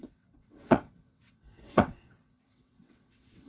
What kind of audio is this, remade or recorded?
remade